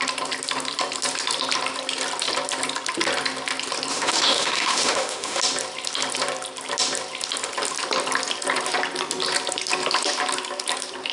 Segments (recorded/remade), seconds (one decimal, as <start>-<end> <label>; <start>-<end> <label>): 0.0-3.9 recorded; 3.9-5.4 remade; 5.4-11.1 recorded